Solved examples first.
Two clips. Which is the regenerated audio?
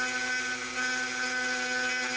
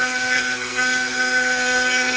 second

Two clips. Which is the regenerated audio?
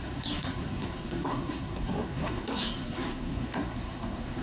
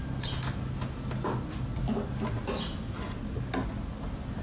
first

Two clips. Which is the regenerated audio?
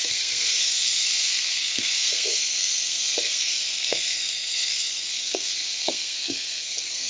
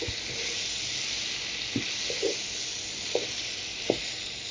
first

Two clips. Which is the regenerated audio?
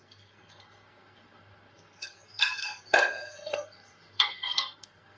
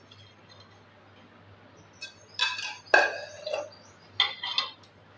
first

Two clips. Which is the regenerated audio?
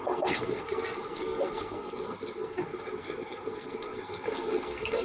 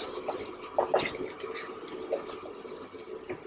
first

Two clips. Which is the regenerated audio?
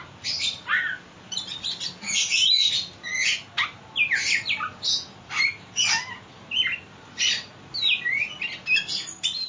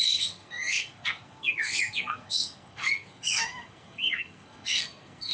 second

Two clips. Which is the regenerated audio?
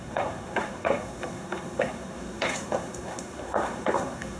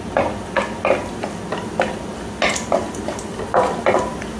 first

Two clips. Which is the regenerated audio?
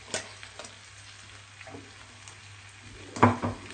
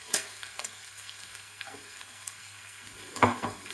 second